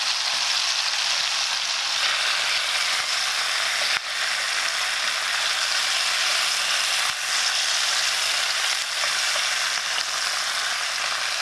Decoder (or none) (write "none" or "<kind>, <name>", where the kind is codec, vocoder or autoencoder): none